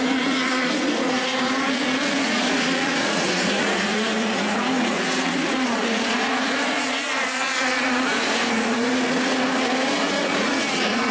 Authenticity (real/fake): fake